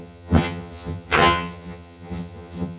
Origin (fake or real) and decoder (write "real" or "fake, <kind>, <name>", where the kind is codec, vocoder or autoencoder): fake, vocoder, HiFi-GAN